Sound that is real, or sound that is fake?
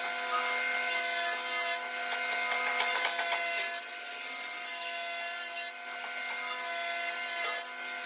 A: real